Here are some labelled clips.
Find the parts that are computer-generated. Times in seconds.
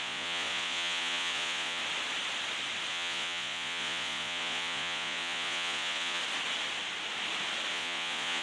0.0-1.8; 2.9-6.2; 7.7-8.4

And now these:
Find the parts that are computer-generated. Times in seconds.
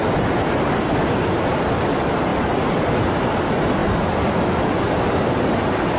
none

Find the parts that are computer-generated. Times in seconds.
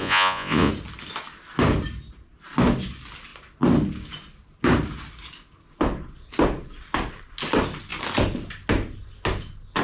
0.0-0.7